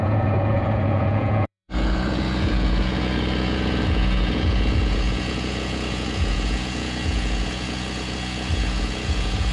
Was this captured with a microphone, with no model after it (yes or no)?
no